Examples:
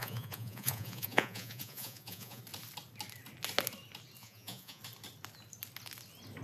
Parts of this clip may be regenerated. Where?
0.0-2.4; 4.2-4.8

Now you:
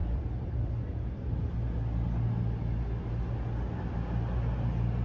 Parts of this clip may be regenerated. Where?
none

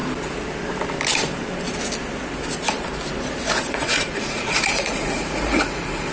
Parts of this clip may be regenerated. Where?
3.7-6.1

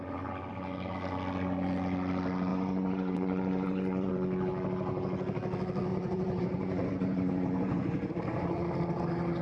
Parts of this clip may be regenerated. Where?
2.5-4.1; 5.9-8.1